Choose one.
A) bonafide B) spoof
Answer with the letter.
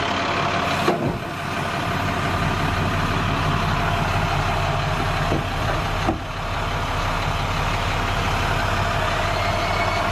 A